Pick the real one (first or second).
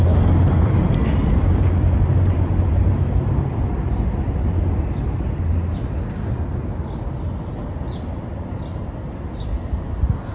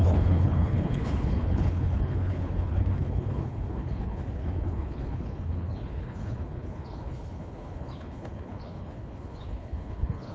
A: first